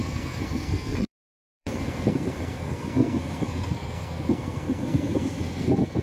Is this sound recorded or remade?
remade